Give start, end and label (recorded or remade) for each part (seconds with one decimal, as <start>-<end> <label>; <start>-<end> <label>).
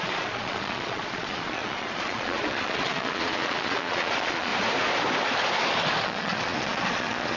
0.0-4.5 remade; 4.5-6.0 recorded; 6.0-7.4 remade